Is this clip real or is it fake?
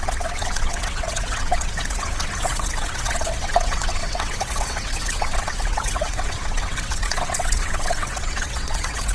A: fake